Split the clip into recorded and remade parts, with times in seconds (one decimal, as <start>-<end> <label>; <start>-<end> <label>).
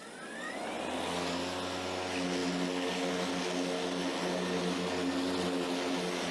0.0-6.3 recorded